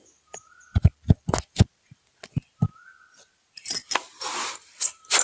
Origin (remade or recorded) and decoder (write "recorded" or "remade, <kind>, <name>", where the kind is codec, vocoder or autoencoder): recorded